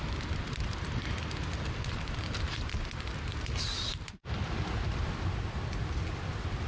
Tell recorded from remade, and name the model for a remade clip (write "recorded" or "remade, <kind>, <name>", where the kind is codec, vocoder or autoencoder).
remade, vocoder, BigVGAN v2